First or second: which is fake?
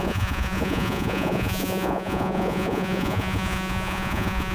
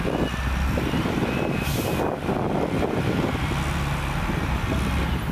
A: first